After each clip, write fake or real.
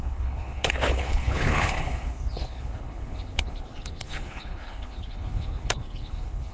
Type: fake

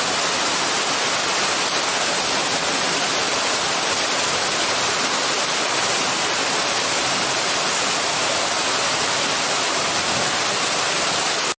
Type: real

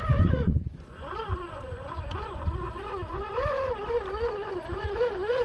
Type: fake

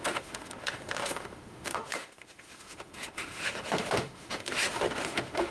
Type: fake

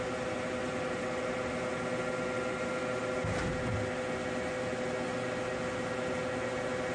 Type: real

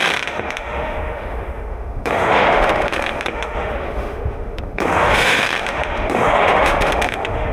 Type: fake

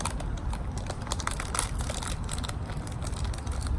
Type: real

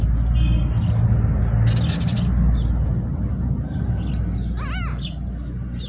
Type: real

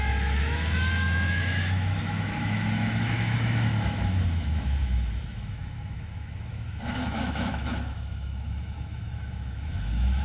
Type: fake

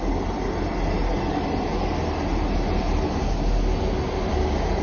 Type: real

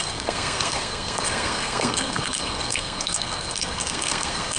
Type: fake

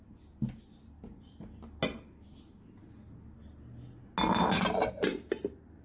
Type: real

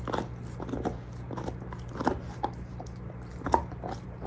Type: real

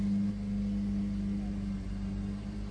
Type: real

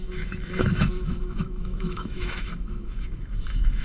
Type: fake